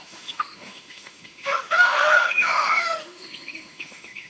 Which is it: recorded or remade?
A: remade